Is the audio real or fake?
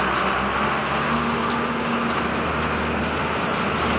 real